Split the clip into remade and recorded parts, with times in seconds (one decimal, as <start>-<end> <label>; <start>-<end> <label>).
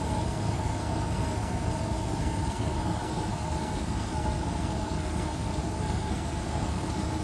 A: 0.0-7.2 remade